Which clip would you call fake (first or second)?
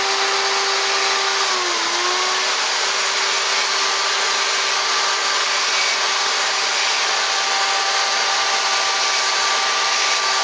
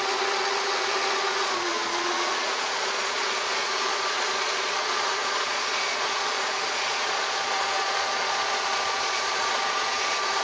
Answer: second